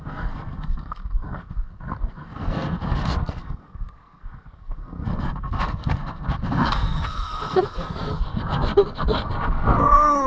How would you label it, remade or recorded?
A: remade